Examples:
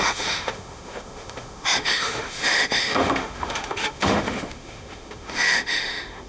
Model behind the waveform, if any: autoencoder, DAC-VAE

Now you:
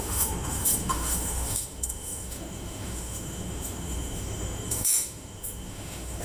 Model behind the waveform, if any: autoencoder, DAC-VAE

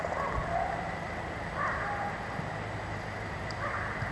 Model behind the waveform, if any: none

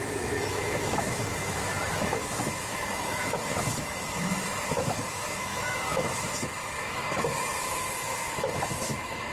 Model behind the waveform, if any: autoencoder, DAC-VAE